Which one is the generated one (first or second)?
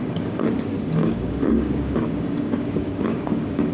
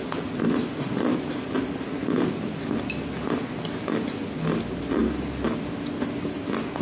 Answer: first